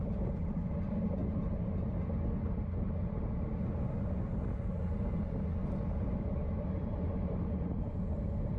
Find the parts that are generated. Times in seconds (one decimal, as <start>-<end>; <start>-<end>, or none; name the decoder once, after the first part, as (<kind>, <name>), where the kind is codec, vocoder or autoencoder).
none